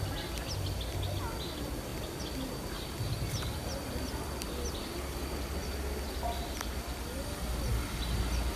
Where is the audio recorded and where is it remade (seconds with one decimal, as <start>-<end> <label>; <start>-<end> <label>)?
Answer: 0.0-8.6 recorded